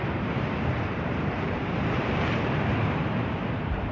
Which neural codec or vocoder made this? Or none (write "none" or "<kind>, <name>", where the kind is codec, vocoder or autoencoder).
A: vocoder, BigVGAN v2